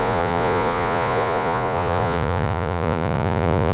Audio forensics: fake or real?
fake